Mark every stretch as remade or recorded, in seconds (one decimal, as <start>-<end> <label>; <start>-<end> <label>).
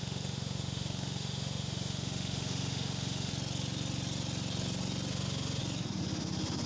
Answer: 0.0-3.3 remade; 3.3-5.1 recorded; 5.1-5.6 remade; 5.6-6.7 recorded